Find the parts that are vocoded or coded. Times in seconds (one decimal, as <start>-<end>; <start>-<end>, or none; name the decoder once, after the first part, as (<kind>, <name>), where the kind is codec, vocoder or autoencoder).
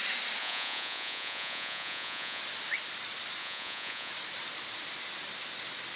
0.4-2.4 (vocoder, Vocos); 3.4-4.1